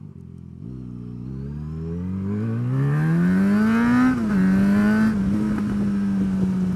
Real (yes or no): yes